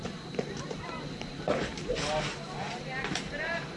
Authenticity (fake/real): fake